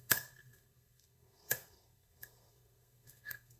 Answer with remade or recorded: remade